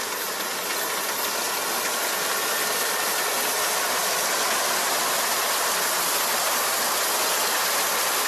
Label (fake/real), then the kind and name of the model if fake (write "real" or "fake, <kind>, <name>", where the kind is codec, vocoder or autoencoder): real